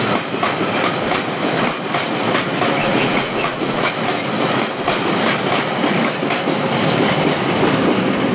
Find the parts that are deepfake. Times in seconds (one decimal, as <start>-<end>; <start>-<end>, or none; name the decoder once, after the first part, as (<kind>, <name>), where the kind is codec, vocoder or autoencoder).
2.8-3.9 (vocoder, Vocos)